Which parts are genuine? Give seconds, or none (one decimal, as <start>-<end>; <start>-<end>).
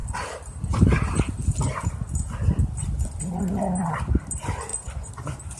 0.0-5.6